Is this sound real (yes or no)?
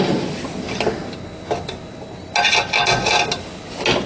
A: yes